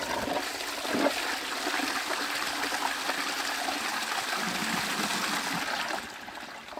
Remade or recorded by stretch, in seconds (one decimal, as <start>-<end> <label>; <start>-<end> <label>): 0.0-6.8 recorded